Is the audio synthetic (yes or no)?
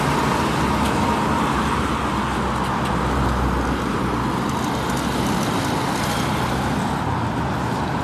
no